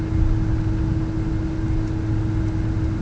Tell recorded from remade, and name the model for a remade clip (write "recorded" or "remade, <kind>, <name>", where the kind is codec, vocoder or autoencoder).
recorded